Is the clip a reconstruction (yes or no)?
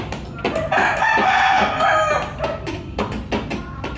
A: no